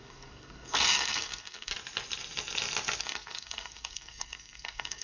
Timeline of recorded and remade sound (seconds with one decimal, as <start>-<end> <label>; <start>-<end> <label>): 0.0-1.7 remade; 1.7-3.0 recorded; 3.0-5.0 remade